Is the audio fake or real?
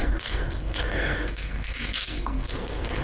fake